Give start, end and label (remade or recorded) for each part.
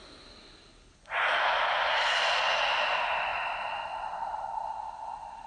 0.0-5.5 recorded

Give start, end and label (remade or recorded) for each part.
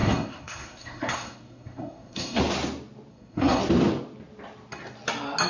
0.0-2.4 remade; 2.4-3.1 recorded; 3.1-3.6 remade; 3.6-5.5 recorded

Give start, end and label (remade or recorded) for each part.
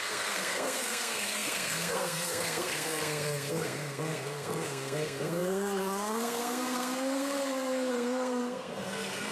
0.0-9.3 remade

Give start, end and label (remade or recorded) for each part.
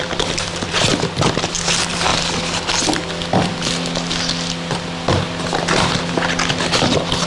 0.0-7.3 recorded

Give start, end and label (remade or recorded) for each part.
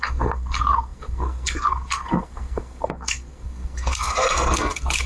0.0-5.1 remade